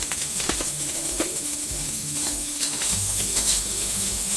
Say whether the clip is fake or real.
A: fake